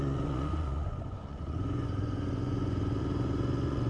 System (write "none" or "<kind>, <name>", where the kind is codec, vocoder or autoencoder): vocoder, Vocos